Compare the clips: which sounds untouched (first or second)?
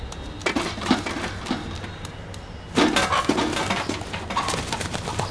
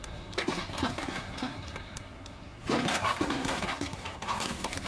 first